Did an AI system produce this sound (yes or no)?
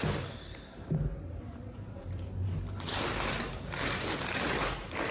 yes